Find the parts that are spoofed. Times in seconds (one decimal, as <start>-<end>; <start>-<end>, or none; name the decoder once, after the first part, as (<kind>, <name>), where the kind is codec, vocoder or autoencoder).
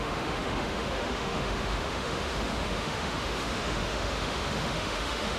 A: 0.0-5.4 (autoencoder, DAC-VAE)